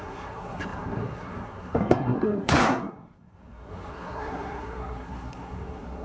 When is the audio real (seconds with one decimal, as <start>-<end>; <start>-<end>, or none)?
none